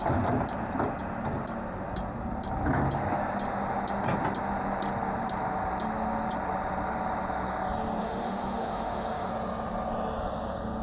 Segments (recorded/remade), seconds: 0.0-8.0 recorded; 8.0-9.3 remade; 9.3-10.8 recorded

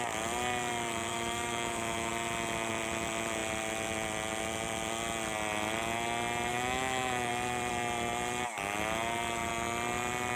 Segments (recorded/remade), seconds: 0.0-1.1 recorded; 1.1-2.1 remade; 2.1-6.5 recorded; 6.5-7.3 remade; 7.3-10.4 recorded

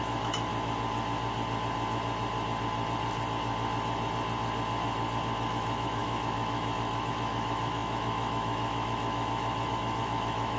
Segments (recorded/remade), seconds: 0.0-0.5 remade; 0.5-5.5 recorded; 5.5-10.6 remade

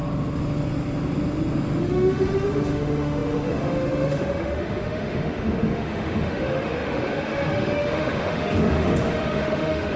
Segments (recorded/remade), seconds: 0.0-1.8 recorded; 1.8-10.0 remade

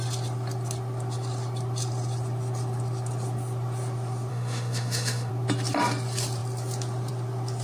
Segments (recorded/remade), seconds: 0.0-4.3 recorded; 4.3-5.3 remade; 5.3-7.6 recorded

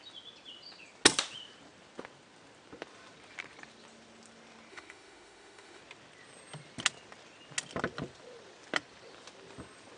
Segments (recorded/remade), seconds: 0.0-4.7 recorded; 4.7-5.8 remade; 5.8-10.0 recorded

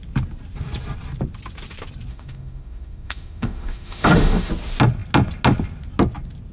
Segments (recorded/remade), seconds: 0.0-2.1 recorded; 2.1-4.5 remade; 4.5-6.5 recorded